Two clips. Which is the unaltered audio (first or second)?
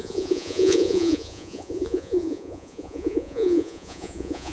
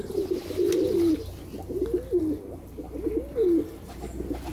second